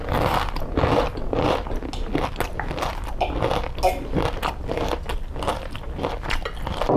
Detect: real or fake real